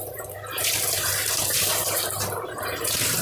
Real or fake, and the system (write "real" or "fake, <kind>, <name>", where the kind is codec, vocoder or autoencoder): fake, vocoder, BigVGAN v2